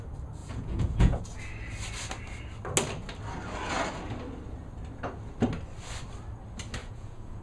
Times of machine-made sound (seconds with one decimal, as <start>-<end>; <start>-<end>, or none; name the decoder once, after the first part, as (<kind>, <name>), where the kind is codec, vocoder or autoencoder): 0.4-1.2 (vocoder, Vocos); 6.8-7.4